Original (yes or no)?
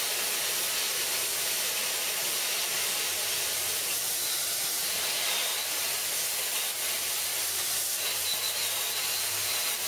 yes